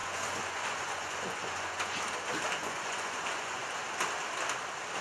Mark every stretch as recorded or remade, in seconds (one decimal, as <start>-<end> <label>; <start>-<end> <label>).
0.0-2.0 remade; 2.0-2.6 recorded; 2.6-3.7 remade; 3.7-5.0 recorded